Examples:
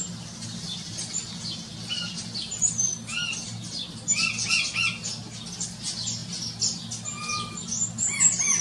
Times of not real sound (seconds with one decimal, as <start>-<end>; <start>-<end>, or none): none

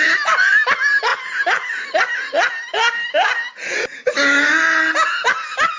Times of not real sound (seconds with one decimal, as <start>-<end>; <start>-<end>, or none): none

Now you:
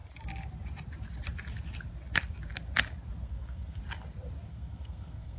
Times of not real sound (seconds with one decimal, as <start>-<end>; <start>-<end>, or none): 3.2-3.8; 4.5-5.4

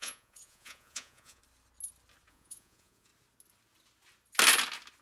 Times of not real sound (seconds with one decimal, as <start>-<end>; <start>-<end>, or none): 0.0-1.4; 2.3-3.1

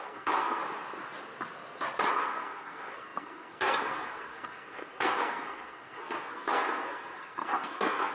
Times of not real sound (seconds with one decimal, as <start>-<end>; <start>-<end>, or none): 0.0-0.6; 2.1-8.1